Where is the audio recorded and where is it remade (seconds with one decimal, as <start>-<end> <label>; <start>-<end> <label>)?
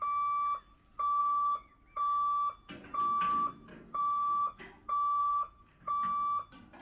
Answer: 0.0-1.2 recorded; 1.2-1.8 remade; 1.8-3.7 recorded; 3.7-4.6 remade; 4.6-5.2 recorded; 5.2-5.9 remade; 5.9-6.8 recorded